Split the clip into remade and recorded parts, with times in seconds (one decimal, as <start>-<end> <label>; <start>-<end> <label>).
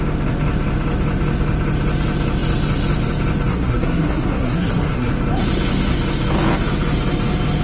0.0-3.5 recorded; 3.5-5.1 remade; 5.1-7.6 recorded